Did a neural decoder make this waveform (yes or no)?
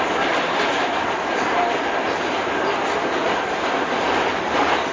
no